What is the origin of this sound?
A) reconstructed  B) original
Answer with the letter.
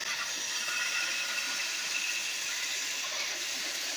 B